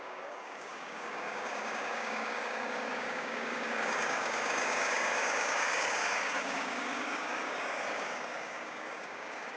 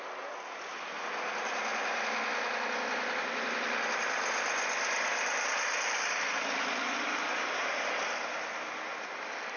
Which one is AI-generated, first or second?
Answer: first